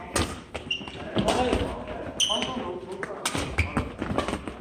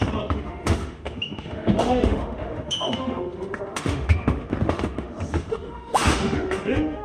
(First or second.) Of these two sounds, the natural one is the first